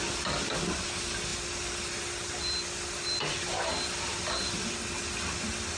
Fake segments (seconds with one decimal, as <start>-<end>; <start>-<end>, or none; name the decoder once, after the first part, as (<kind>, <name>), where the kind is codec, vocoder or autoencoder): none